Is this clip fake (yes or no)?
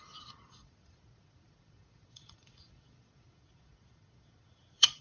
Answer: yes